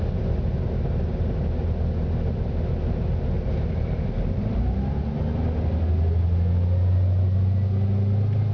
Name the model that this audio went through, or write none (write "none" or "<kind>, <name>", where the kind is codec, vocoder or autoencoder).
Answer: none